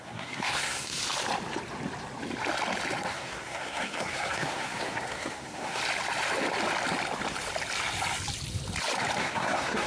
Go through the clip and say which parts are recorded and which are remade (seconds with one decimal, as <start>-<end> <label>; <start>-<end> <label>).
0.0-1.0 remade; 1.0-3.1 recorded; 3.1-5.8 remade; 5.8-9.2 recorded; 9.2-9.9 remade